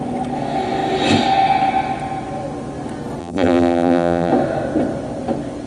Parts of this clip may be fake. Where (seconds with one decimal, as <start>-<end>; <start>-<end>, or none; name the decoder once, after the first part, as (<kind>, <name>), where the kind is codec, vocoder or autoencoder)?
3.2-4.3 (vocoder, BigVGAN v2)

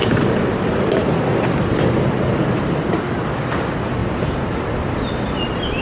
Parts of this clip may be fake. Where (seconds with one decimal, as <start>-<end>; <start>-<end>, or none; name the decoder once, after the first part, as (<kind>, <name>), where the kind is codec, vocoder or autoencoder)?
4.0-4.7 (vocoder, BigVGAN v2)

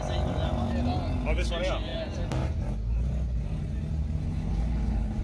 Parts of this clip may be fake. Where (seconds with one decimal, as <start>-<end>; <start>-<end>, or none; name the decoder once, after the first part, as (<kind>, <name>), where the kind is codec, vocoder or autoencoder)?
4.2-5.2 (codec, HILCodec)

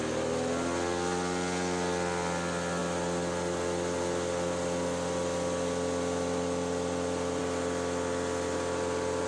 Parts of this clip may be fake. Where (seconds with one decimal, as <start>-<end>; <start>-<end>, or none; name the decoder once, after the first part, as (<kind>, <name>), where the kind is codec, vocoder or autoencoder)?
none

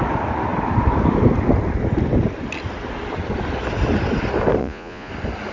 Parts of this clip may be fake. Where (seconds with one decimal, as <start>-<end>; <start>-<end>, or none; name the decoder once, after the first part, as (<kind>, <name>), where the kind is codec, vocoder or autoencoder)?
4.6-5.1 (vocoder, Vocos)

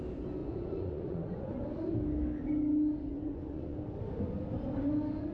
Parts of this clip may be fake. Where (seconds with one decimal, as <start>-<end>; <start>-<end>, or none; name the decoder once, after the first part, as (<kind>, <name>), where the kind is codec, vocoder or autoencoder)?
0.4-1.6 (vocoder, Vocos); 3.1-3.8

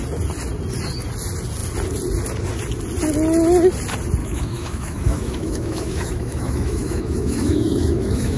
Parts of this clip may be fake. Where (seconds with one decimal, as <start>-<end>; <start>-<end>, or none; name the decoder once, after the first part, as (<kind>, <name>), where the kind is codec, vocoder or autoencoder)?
4.2-8.4 (autoencoder, DAC-VAE)

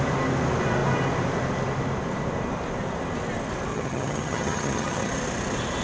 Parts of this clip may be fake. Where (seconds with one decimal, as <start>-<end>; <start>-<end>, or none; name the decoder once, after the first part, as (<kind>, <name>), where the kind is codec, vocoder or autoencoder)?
3.7-5.1 (vocoder, HiFi-GAN)